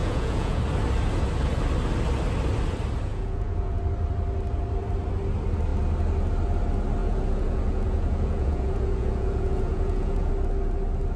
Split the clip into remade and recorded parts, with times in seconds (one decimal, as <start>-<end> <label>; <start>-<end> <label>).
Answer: 0.0-0.6 remade; 0.6-3.1 recorded; 3.1-3.8 remade; 3.8-7.0 recorded; 7.0-10.3 remade; 10.3-11.2 recorded